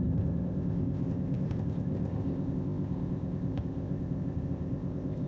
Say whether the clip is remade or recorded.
remade